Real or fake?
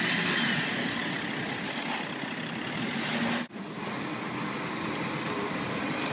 real